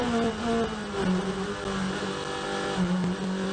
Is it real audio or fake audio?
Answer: real